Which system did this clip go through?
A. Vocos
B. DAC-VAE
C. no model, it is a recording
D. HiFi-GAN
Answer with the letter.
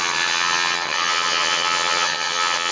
D